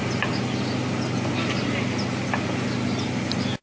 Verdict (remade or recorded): recorded